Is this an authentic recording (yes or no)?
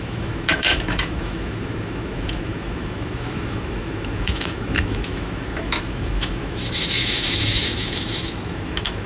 no